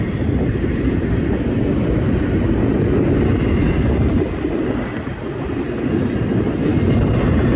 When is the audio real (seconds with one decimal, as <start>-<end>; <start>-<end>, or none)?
0.0-7.6